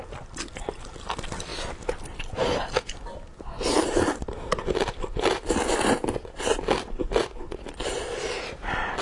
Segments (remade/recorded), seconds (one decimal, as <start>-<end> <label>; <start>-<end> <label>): 0.0-1.5 remade; 1.5-2.9 recorded; 2.9-9.0 remade